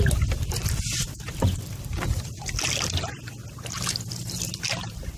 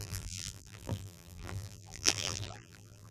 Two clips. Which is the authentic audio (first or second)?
first